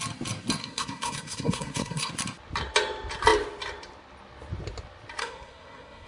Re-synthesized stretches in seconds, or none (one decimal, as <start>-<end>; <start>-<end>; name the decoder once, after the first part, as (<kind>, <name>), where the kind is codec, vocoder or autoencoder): 0.6-2.1 (codec, SNAC); 5.2-6.1